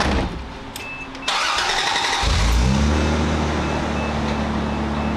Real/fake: real